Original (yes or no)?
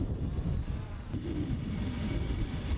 no